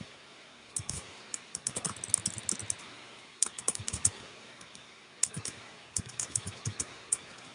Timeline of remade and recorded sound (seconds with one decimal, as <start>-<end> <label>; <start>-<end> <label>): 0.0-1.9 remade; 1.9-2.8 recorded; 2.8-7.5 remade